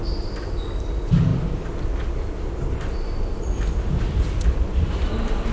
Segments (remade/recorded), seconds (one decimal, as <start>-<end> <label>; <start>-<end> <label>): 0.0-5.5 recorded